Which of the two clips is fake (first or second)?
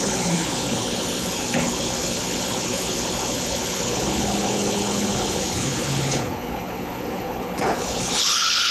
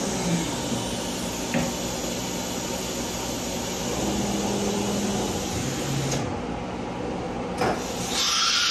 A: first